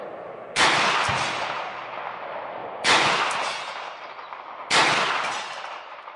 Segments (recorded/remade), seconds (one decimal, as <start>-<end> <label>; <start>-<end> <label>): 0.0-2.6 recorded; 2.6-3.1 remade; 3.1-6.2 recorded